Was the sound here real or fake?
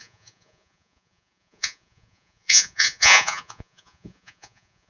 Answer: fake